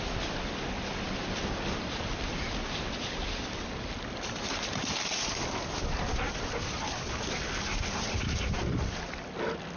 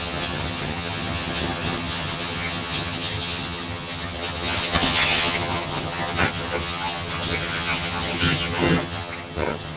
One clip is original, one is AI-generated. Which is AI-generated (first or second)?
second